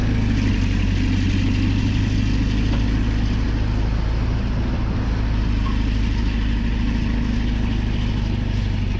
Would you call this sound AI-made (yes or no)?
no